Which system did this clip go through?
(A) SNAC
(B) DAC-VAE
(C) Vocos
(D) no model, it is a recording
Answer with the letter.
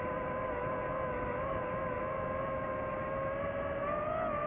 D